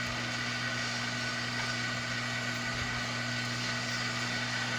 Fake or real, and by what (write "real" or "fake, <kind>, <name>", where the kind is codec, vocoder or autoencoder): real